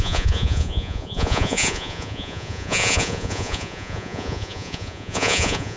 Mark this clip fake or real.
fake